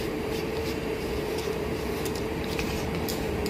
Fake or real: fake